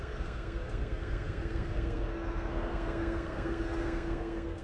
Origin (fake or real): fake